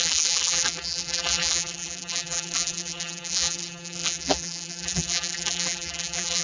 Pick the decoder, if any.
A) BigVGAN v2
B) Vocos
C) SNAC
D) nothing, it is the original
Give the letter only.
A